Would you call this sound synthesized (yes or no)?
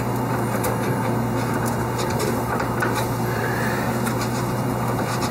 yes